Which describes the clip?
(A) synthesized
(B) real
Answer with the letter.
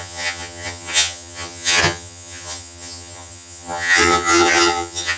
A